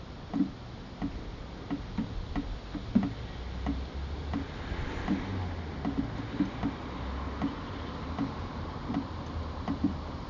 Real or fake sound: real